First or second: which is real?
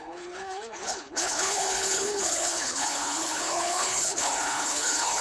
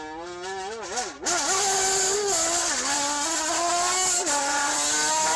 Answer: second